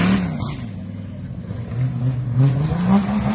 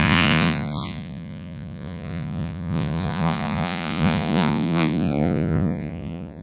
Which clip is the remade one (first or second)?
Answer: second